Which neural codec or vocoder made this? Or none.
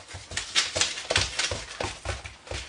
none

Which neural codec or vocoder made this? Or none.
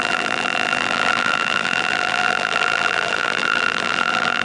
vocoder, BigVGAN v2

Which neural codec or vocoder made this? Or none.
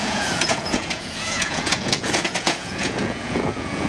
vocoder, Vocos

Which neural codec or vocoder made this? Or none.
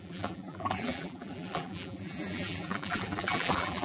vocoder, BigVGAN v2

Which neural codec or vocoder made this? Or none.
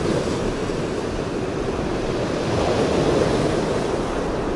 none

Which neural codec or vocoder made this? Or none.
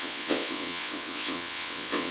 vocoder, WaveNeXt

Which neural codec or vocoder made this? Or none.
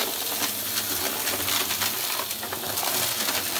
none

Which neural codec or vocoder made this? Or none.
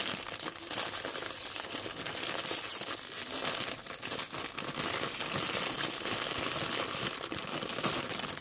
none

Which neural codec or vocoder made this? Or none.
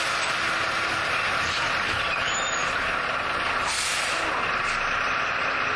none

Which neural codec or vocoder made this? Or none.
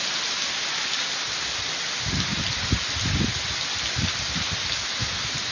none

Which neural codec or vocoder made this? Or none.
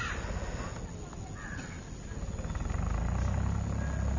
none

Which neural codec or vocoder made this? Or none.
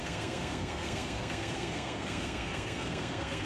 codec, SNAC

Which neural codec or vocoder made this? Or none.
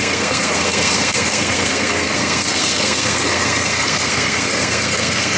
codec, SNAC